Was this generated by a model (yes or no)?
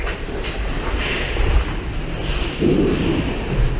no